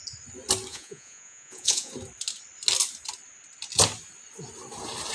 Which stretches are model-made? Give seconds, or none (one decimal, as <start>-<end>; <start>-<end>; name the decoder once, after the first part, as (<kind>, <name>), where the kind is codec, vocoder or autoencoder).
0.7-1.9 (vocoder, Vocos)